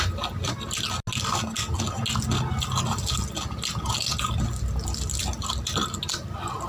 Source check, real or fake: real